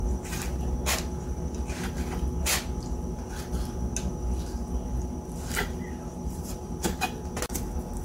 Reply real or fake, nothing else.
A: real